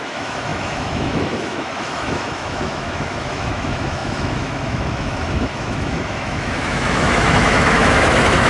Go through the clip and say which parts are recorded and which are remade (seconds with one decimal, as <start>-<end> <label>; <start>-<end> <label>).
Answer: 0.0-8.5 remade